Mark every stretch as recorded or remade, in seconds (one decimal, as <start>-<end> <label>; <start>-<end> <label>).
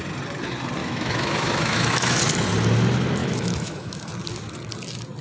0.0-0.8 recorded; 0.8-2.2 remade; 2.2-3.2 recorded; 3.2-4.0 remade; 4.0-5.2 recorded